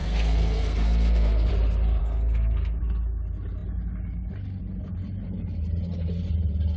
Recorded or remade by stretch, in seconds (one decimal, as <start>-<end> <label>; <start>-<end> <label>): 0.0-1.5 remade; 1.5-2.0 recorded; 2.0-2.8 remade; 2.8-6.8 recorded